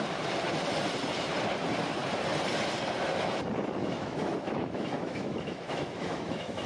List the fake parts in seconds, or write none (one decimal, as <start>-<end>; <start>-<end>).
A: 3.8-6.7